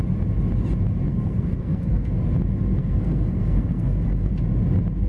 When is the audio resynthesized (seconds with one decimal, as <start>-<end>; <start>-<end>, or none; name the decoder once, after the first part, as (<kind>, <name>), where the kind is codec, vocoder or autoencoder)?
1.1-2.2 (codec, SNAC); 2.8-4.3